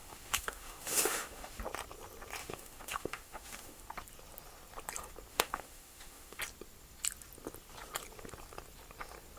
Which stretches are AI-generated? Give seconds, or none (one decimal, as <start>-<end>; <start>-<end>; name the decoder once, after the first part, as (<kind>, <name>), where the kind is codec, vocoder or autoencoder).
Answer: 0.0-1.6 (autoencoder, DAC-VAE); 2.4-3.8; 5.3-6.4